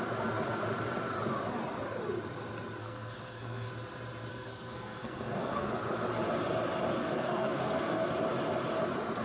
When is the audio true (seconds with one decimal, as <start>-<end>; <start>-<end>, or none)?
0.0-2.8; 3.7-4.3; 5.7-7.0; 8.1-9.2